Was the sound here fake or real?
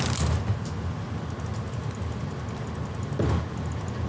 real